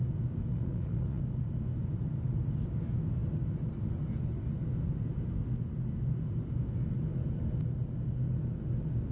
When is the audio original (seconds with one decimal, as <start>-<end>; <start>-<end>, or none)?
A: 0.0-0.5; 1.2-9.1

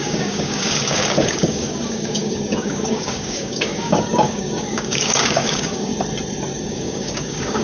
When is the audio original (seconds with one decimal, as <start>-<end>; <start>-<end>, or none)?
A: 5.9-6.6